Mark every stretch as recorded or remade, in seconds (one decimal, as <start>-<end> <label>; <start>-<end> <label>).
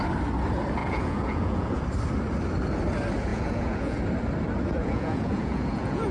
0.0-0.8 recorded; 0.8-1.8 remade; 1.8-3.3 recorded; 3.3-4.0 remade; 4.0-4.8 recorded; 4.8-6.1 remade